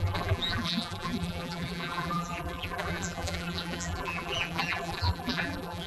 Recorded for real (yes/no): no